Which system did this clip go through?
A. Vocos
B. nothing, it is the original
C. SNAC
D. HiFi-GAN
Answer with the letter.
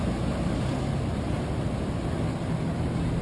B